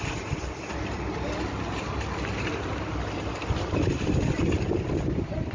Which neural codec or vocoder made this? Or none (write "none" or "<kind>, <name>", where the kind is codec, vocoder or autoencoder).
none